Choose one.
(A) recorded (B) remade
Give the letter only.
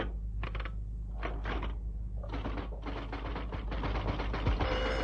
A